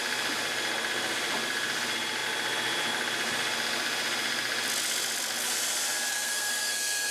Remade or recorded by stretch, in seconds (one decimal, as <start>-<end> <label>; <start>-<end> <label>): 0.0-6.1 recorded; 6.1-7.1 remade